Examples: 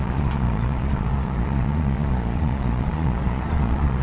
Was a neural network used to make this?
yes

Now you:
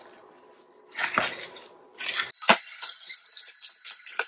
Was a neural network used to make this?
no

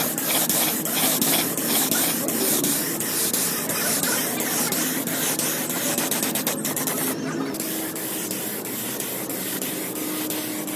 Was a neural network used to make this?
no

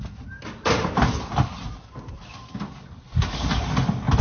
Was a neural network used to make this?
no